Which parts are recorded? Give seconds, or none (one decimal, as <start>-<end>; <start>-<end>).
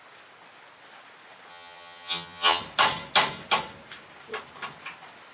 0.0-1.5; 2.6-5.3